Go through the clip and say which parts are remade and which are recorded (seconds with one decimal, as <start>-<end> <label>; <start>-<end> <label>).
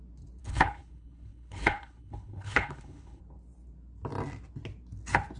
0.0-0.4 recorded; 0.4-3.2 remade; 3.2-5.4 recorded